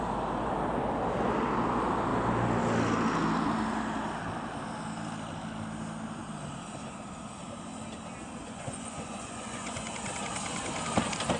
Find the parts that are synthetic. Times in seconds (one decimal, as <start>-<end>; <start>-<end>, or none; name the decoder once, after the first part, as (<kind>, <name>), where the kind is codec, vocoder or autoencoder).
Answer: 8.4-9.9 (vocoder, Vocos)